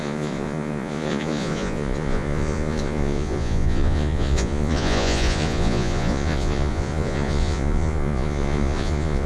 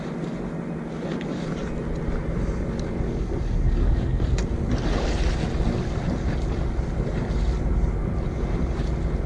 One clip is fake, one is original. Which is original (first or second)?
second